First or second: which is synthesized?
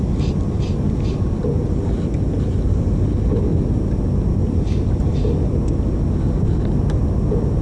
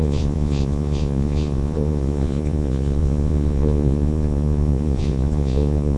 second